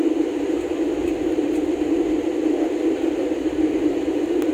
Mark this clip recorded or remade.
recorded